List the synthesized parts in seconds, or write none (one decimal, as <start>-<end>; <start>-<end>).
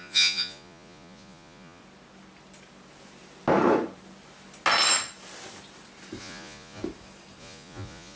0.0-1.8; 6.2-6.8; 7.4-8.2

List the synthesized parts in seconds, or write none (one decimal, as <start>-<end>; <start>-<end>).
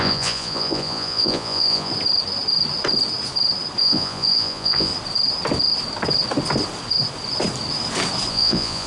0.0-1.9; 3.8-4.9; 8.3-8.9